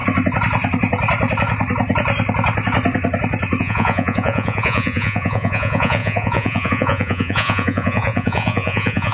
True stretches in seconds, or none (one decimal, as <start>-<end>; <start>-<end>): 0.0-3.6